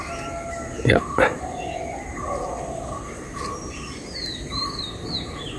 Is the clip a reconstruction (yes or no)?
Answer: no